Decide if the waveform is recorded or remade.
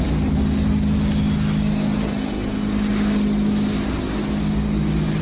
recorded